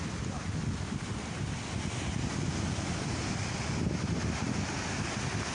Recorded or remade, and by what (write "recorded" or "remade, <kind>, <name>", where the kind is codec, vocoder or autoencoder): recorded